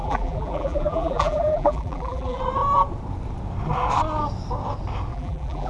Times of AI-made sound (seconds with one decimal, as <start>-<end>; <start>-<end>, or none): 0.0-2.4; 5.1-5.7